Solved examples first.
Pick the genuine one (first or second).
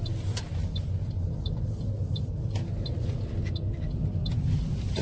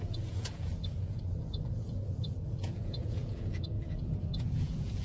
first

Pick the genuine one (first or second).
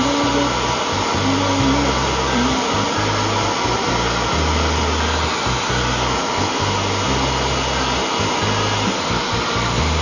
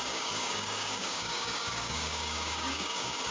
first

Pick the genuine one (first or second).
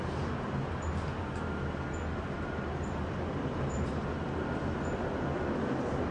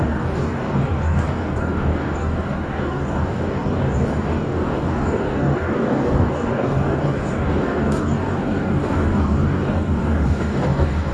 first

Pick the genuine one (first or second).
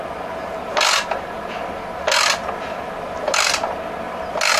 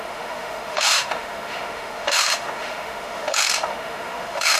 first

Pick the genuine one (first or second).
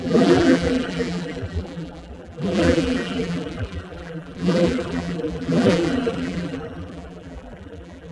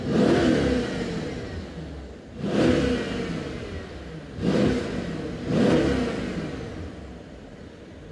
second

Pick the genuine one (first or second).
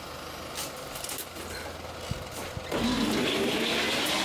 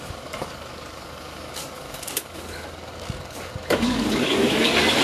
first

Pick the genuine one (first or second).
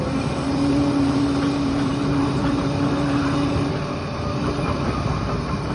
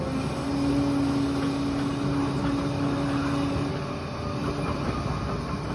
second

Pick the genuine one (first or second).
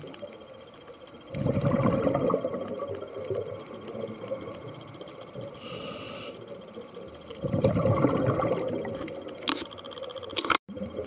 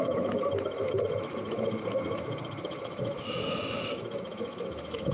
first